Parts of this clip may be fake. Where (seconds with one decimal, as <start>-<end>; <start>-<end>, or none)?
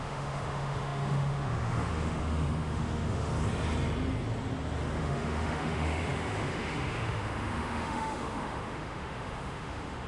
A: 0.0-3.3; 5.0-10.1